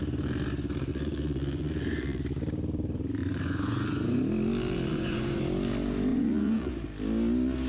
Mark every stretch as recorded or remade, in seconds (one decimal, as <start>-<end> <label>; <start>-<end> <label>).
0.0-0.9 recorded; 0.9-2.2 remade; 2.2-3.2 recorded; 3.2-4.2 remade; 4.2-4.9 recorded; 4.9-5.4 remade; 5.4-6.1 recorded; 6.1-6.7 remade; 6.7-7.7 recorded